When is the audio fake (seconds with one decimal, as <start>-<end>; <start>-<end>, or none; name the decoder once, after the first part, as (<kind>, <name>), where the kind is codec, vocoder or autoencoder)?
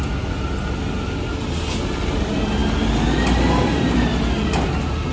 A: none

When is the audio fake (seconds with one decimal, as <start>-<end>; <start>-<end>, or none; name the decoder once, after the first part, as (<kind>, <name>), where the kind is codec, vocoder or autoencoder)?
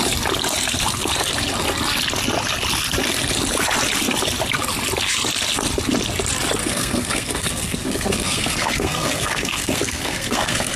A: 6.6-10.8 (codec, SNAC)